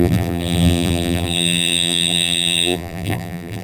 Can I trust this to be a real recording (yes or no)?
no